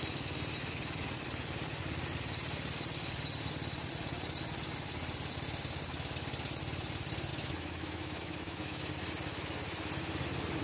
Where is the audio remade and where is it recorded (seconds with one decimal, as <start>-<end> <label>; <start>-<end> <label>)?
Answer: 0.0-7.3 recorded; 7.3-8.9 remade; 8.9-10.6 recorded